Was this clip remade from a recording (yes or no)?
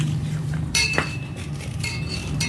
yes